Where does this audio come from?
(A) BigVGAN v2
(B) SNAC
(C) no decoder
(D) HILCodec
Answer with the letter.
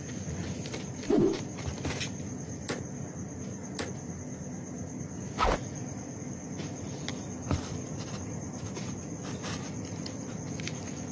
C